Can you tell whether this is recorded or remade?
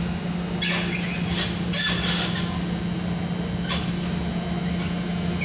recorded